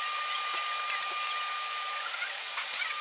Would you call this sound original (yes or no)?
yes